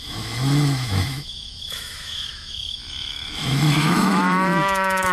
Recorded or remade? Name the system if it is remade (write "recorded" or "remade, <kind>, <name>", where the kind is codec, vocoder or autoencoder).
remade, autoencoder, DAC-VAE